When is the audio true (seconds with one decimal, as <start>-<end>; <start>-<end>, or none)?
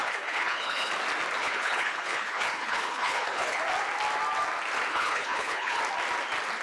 0.9-1.4; 3.6-4.9; 5.8-6.6